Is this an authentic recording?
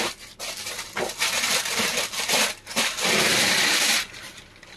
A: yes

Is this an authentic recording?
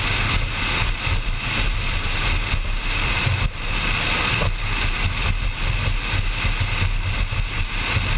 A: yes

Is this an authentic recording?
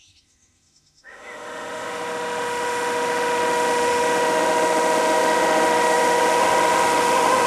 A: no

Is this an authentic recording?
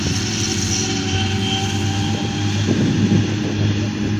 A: yes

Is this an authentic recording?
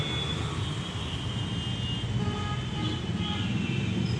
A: yes